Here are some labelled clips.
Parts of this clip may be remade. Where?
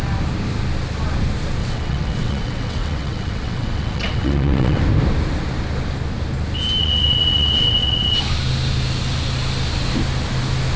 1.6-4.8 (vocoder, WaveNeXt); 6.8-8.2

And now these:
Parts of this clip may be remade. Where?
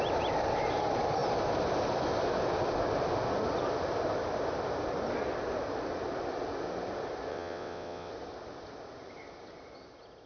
7.3-8.1 (vocoder, WaveNeXt)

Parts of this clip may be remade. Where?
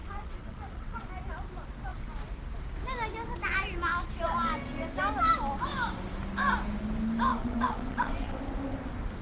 0.0-1.1 (vocoder, WaveNeXt); 7.3-8.4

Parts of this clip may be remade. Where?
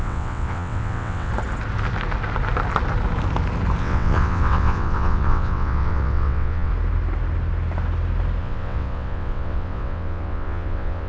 0.0-1.3 (vocoder, WaveNeXt); 3.8-6.7; 8.4-11.1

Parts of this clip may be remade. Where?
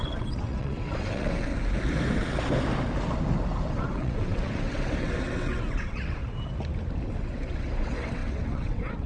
0.0-1.5 (vocoder, WaveNeXt); 3.7-6.2; 7.1-9.1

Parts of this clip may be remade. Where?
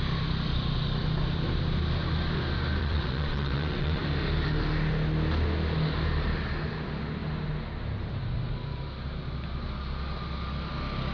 2.8-4.0 (vocoder, WaveNeXt)